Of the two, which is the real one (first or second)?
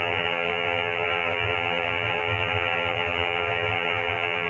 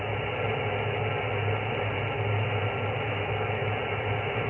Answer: second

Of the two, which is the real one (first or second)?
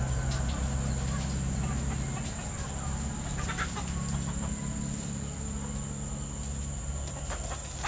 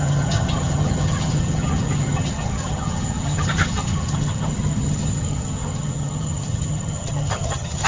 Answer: first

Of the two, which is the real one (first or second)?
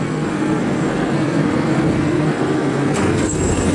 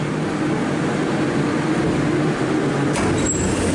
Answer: second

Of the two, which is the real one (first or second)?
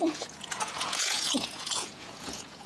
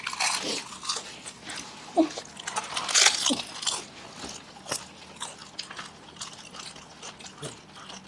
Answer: second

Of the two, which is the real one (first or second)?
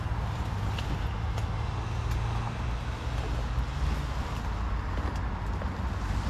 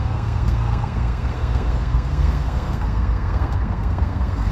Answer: first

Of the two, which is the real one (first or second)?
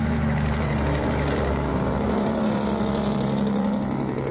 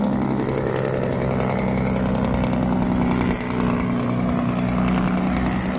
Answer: second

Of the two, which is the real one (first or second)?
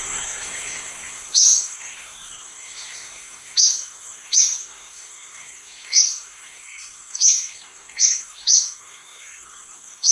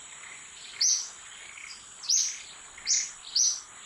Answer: second